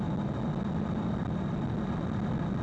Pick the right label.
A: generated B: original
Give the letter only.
B